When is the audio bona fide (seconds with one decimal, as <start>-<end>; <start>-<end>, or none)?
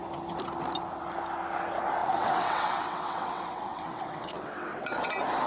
0.0-2.0; 5.1-5.5